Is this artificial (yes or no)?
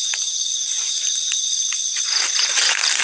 no